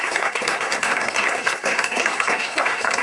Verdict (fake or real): fake